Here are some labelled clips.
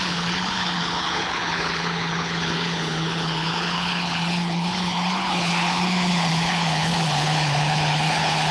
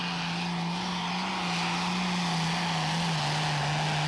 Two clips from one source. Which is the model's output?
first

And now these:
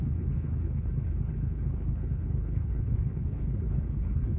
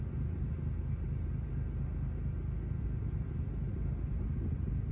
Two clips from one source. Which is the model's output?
first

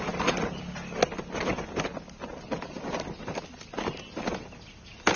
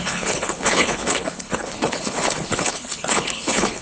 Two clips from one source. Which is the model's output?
second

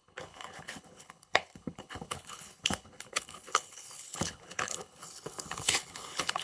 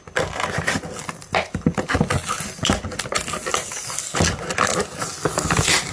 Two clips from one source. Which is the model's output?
first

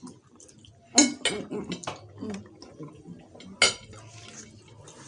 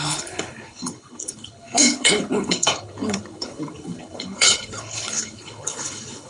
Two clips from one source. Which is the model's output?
second